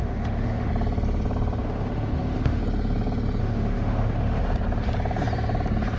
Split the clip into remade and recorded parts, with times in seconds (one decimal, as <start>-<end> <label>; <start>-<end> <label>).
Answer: 0.0-0.7 remade; 0.7-1.6 recorded; 1.6-2.6 remade; 2.6-3.4 recorded; 3.4-4.4 remade; 4.4-6.0 recorded